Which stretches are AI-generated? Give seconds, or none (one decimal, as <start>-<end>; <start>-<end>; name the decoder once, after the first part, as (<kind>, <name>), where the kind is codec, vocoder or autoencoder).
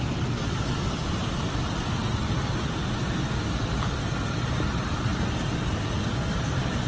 none